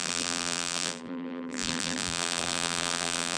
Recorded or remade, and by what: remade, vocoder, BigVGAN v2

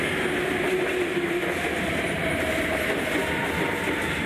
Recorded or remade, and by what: recorded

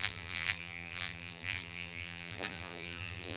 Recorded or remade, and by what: remade, vocoder, BigVGAN v2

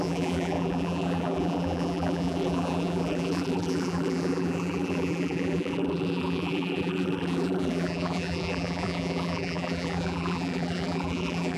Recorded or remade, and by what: remade, vocoder, BigVGAN v2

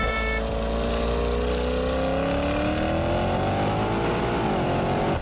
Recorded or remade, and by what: recorded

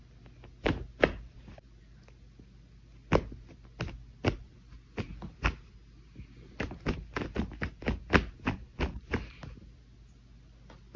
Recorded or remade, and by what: recorded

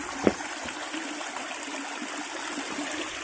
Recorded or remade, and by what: recorded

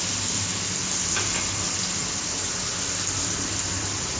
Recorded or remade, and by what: recorded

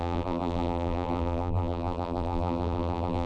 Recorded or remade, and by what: remade, vocoder, BigVGAN v2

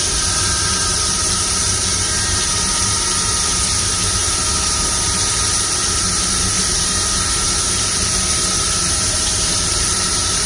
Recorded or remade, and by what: remade, vocoder, BigVGAN v2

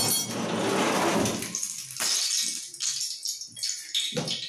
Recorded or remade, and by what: recorded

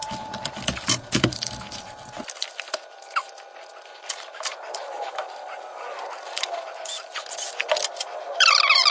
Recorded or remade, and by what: remade, vocoder, BigVGAN v2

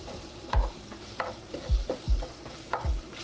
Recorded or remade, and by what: remade, vocoder, BigVGAN v2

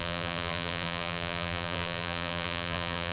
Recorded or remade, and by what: remade, vocoder, BigVGAN v2